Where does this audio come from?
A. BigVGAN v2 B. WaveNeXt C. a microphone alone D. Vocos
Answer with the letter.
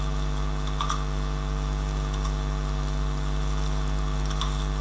C